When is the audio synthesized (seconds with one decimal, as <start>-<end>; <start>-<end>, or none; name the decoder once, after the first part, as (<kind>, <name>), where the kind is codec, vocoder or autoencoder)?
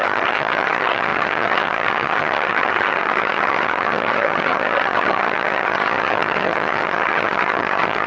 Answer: 0.0-8.1 (vocoder, HiFi-GAN)